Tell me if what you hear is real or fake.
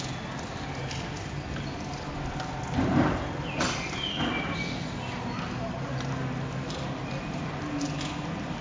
real